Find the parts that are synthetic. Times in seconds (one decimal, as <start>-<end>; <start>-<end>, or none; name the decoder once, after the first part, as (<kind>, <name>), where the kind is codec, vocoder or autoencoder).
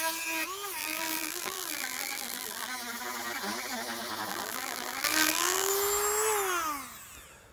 0.8-2.7 (vocoder, BigVGAN v2); 4.3-5.7